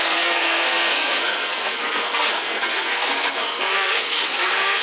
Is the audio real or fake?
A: fake